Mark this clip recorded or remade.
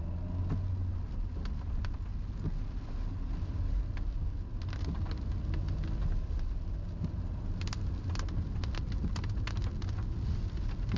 recorded